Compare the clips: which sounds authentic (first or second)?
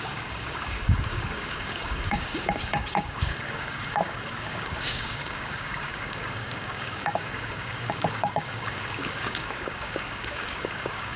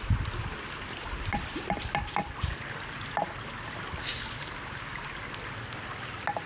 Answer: second